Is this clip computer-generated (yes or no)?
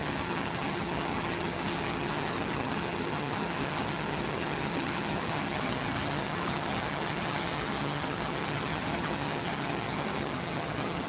yes